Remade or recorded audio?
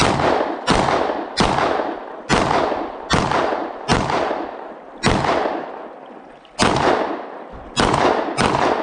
recorded